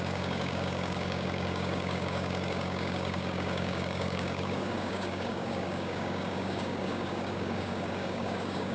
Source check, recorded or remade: remade